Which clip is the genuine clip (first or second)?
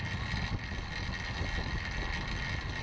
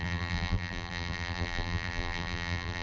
first